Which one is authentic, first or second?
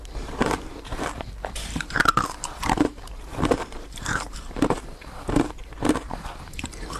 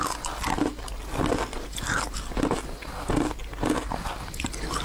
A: second